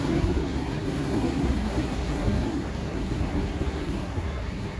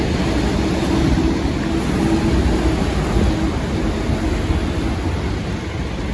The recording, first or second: second